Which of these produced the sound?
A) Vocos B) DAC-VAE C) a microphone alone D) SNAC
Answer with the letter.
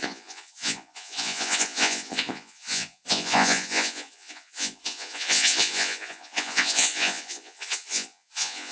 A